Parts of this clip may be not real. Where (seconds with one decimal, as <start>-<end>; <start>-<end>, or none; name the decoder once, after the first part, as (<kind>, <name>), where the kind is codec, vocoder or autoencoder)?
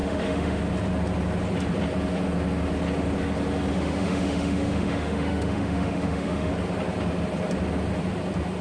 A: 0.0-0.6 (autoencoder, DAC-VAE); 3.7-6.5